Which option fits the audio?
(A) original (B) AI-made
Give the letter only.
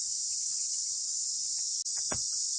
A